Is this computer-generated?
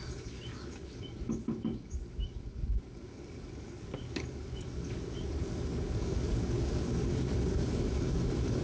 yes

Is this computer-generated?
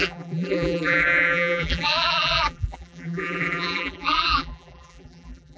yes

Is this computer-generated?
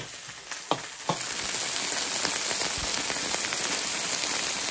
no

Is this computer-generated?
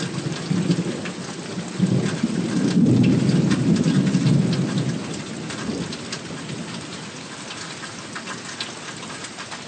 no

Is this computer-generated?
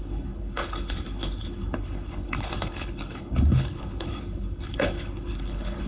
yes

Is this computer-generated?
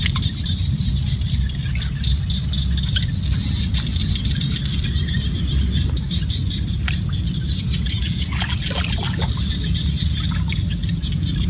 no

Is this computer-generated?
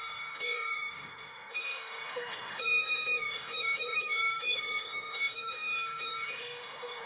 yes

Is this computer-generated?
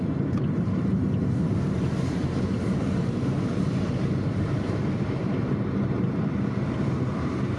yes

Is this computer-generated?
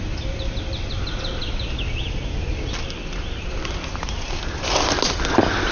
no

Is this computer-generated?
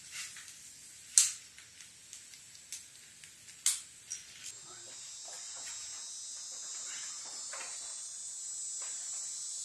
no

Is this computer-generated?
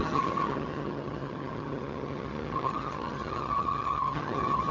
yes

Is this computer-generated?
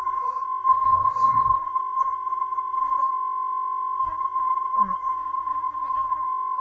yes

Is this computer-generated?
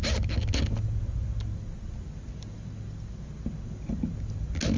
no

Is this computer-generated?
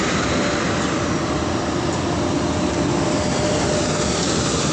no